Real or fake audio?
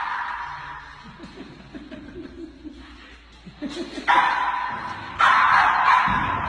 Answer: real